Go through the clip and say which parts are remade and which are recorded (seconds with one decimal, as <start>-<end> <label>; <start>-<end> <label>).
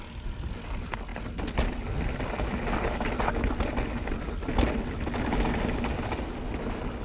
0.0-7.0 recorded